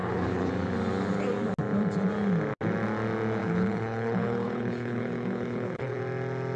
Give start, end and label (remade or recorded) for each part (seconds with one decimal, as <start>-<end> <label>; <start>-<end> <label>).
0.0-0.5 remade; 0.5-3.4 recorded; 3.4-6.0 remade; 6.0-6.6 recorded

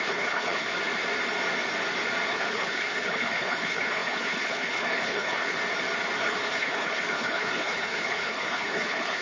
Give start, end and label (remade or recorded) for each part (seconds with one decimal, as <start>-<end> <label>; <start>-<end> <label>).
0.0-0.7 remade; 0.7-2.3 recorded; 2.3-5.6 remade; 5.6-6.2 recorded; 6.2-9.2 remade

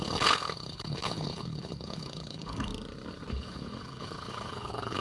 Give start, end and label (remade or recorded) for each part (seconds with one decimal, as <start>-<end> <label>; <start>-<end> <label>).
0.0-2.7 remade; 2.7-3.3 recorded; 3.3-5.0 remade

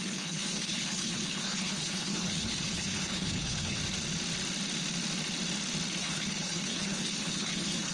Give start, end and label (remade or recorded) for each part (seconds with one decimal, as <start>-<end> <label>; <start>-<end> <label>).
0.0-3.8 remade; 3.8-6.0 recorded; 6.0-7.9 remade